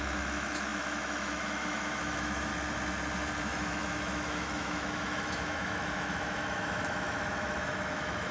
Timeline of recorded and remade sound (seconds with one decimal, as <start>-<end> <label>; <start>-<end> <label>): 0.0-2.5 remade; 2.5-3.4 recorded; 3.4-8.3 remade